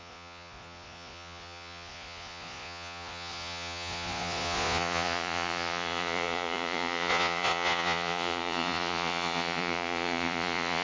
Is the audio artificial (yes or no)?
yes